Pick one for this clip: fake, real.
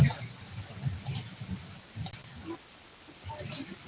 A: fake